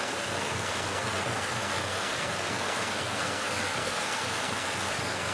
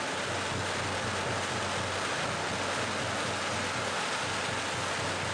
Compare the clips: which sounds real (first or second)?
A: second